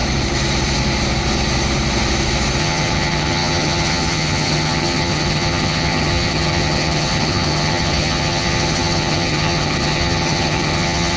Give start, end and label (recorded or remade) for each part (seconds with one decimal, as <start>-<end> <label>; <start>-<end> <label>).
0.0-2.6 recorded; 2.6-11.2 remade